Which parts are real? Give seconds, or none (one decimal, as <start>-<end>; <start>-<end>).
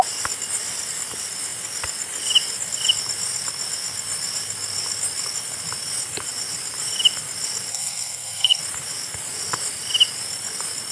0.0-7.7; 8.6-10.9